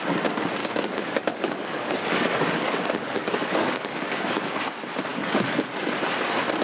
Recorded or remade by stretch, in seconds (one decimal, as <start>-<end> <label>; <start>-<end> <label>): 0.0-0.6 recorded; 0.6-4.6 remade; 4.6-5.1 recorded; 5.1-5.7 remade; 5.7-6.6 recorded